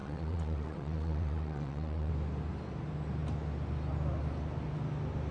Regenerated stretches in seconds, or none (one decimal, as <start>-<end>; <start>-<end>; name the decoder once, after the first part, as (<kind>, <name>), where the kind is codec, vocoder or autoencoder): 0.0-2.1 (vocoder, WaveNeXt)